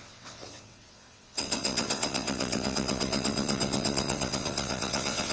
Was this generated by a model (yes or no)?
yes